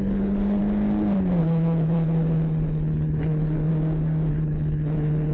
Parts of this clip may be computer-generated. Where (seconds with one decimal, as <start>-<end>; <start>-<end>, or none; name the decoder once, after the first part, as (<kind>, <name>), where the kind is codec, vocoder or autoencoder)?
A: 0.0-0.6 (codec, HILCodec); 1.4-3.7; 4.3-5.3